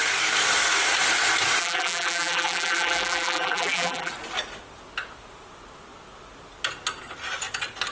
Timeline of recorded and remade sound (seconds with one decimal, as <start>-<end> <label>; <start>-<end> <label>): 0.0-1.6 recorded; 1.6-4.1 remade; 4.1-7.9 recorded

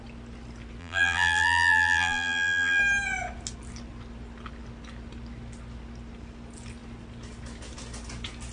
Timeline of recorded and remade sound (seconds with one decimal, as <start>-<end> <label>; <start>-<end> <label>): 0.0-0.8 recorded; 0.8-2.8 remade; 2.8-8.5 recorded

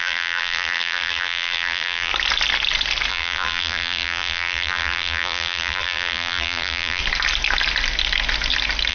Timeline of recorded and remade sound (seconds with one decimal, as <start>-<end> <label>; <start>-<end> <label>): 0.0-2.1 remade; 2.1-3.1 recorded; 3.1-7.0 remade; 7.0-8.9 recorded

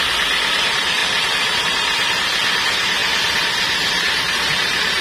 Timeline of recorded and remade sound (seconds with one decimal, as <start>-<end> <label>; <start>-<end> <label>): 0.0-5.0 recorded